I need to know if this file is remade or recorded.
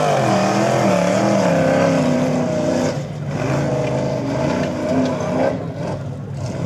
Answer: recorded